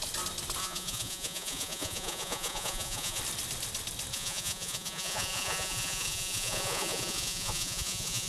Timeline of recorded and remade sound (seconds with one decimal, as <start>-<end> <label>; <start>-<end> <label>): 0.0-0.6 recorded; 0.6-3.2 remade; 3.2-4.1 recorded; 4.1-8.3 remade